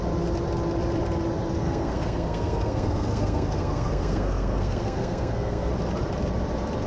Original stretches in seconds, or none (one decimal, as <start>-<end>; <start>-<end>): 0.0-1.6; 5.7-6.9